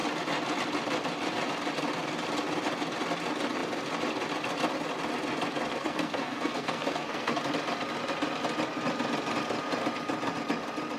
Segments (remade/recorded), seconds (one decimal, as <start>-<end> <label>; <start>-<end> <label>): 0.0-5.7 recorded; 5.7-7.4 remade; 7.4-11.0 recorded